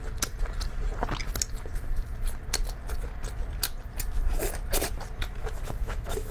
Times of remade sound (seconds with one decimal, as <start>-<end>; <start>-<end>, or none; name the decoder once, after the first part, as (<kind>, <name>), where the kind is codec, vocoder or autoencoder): 5.4-6.3 (autoencoder, DAC-VAE)